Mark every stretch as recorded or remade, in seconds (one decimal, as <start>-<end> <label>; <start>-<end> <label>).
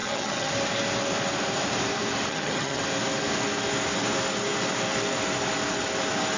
0.0-0.5 remade; 0.5-2.3 recorded; 2.3-2.8 remade; 2.8-6.4 recorded